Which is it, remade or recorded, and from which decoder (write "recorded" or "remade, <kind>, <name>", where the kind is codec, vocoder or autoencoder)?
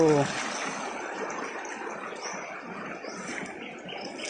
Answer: recorded